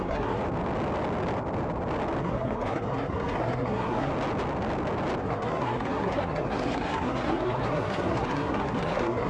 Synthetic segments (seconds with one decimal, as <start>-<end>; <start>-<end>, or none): 0.0-0.4; 2.2-4.1; 5.2-9.3